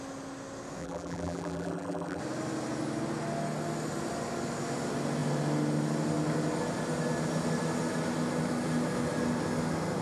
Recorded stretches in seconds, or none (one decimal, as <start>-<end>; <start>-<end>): 0.0-0.8; 2.2-10.0